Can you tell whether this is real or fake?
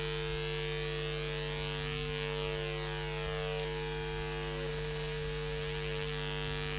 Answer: real